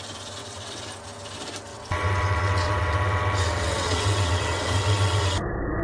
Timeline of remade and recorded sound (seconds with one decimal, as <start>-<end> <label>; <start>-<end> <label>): 0.0-0.4 recorded; 0.4-0.9 remade; 0.9-1.7 recorded; 1.7-5.2 remade; 5.2-5.8 recorded